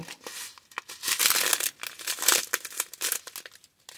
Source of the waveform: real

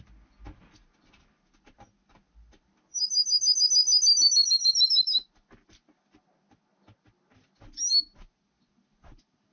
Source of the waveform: real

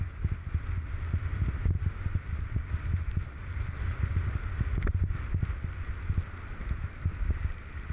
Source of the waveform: real